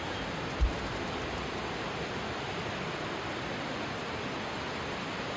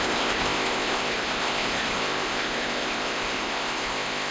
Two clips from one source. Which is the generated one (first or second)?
second